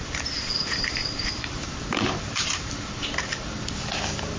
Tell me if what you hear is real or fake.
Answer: fake